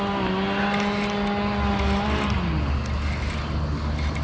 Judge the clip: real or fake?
real